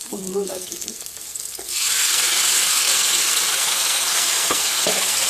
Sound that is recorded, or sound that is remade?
remade